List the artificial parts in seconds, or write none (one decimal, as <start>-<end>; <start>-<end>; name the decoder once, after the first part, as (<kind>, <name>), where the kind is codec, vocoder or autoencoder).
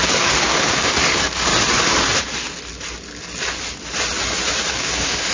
0.0-1.5 (codec, DAC); 4.7-5.3